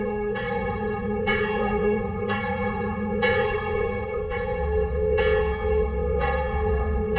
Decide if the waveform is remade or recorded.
remade